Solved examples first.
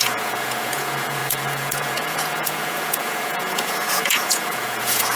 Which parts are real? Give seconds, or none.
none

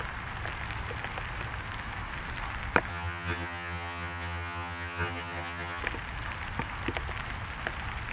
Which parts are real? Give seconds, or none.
0.0-2.9; 5.8-8.1

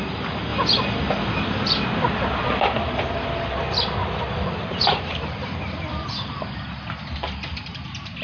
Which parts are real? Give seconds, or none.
0.0-4.0; 6.7-8.2

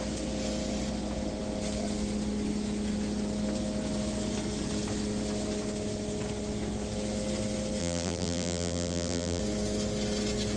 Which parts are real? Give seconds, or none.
0.0-7.8; 9.4-10.6

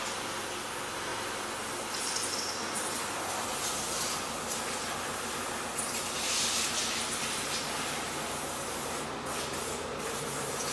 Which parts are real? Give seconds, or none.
0.0-10.7

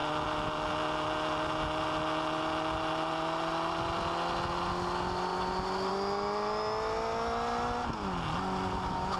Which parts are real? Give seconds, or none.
0.0-9.2